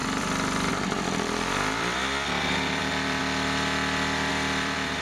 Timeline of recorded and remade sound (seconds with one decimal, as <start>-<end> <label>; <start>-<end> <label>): 0.0-5.0 remade